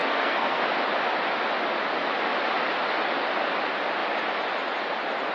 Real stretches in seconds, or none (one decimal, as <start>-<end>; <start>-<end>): 0.6-5.3

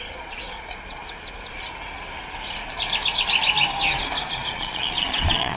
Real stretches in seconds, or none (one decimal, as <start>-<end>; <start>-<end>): 1.0-4.3

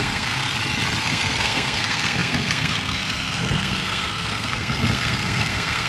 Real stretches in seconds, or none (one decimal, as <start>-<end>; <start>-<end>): 0.4-1.0

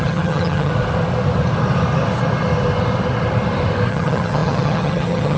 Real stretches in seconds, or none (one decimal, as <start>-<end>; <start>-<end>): 0.7-3.9

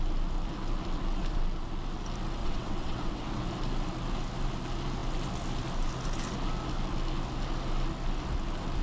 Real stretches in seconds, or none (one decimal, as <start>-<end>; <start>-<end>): 0.0-2.4; 3.4-8.8

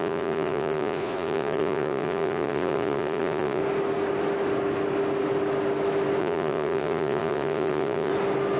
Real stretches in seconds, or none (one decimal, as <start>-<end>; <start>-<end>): 3.6-6.2; 8.1-8.6

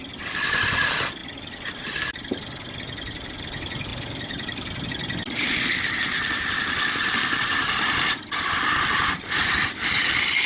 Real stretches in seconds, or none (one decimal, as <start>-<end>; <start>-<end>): 0.0-10.5